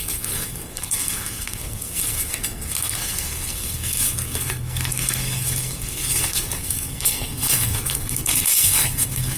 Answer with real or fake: fake